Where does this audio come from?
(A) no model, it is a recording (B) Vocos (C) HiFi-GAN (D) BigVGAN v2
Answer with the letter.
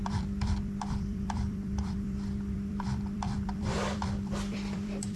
D